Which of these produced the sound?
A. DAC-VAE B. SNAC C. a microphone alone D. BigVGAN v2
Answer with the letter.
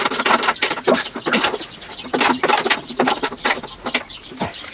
C